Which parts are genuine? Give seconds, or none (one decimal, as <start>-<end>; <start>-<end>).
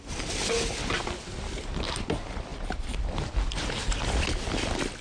0.0-5.0